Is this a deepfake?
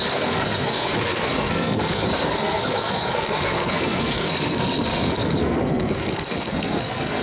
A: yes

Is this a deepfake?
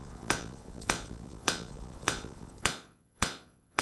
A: yes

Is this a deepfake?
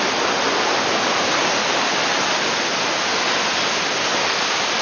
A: no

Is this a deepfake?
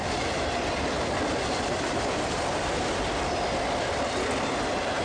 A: yes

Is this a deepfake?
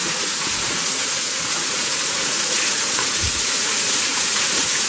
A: yes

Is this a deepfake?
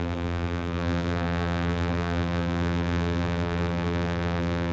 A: yes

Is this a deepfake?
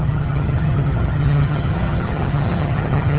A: yes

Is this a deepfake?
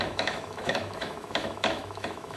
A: yes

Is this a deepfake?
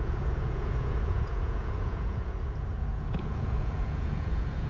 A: yes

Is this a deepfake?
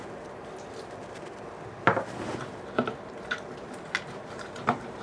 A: no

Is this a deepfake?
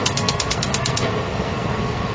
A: yes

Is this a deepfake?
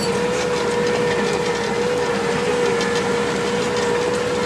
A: no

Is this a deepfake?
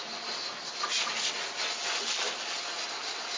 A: no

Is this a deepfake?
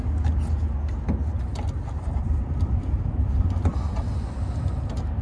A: no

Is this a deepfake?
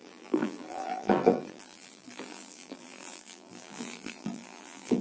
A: yes